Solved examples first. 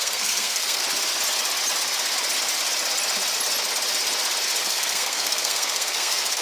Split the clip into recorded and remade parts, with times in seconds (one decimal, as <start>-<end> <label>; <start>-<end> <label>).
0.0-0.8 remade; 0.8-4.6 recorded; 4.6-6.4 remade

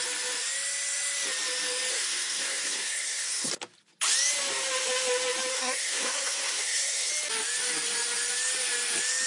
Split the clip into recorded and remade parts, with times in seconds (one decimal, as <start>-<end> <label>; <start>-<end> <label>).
0.0-1.9 recorded; 1.9-3.5 remade; 3.5-5.5 recorded; 5.5-7.1 remade; 7.1-9.3 recorded

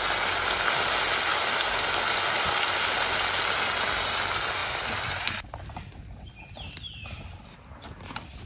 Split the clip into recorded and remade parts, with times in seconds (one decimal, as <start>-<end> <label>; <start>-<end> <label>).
0.0-8.5 recorded